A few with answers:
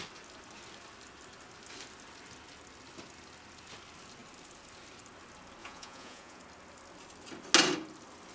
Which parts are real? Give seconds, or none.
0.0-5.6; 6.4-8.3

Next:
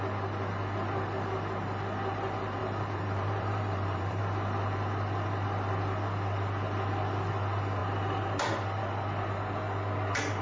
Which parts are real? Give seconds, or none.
0.0-2.6; 4.2-10.4